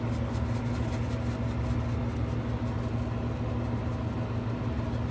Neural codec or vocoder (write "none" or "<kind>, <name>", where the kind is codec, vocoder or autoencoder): none